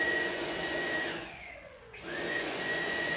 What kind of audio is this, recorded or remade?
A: remade